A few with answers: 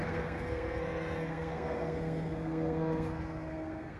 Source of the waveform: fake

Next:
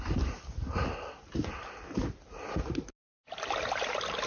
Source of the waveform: real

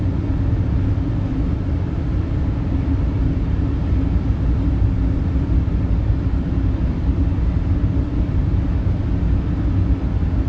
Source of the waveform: fake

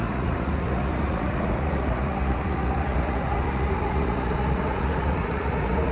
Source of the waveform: fake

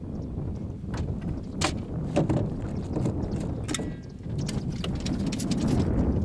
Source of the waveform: real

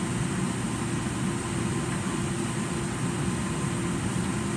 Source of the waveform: real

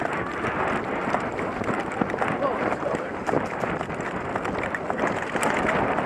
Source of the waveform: real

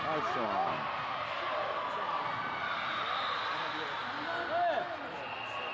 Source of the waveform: real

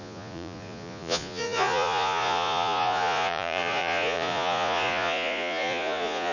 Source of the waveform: fake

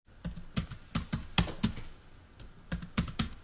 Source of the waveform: real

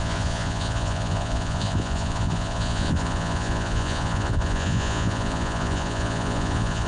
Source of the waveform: fake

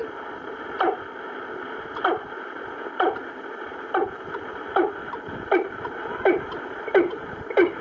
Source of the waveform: real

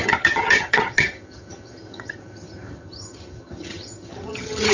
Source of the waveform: fake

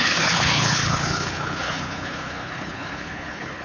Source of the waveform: fake